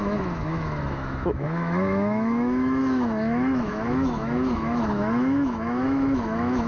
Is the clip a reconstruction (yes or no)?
yes